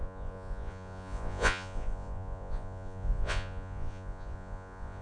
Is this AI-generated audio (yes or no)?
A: yes